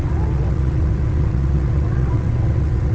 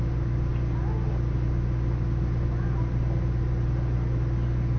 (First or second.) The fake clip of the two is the first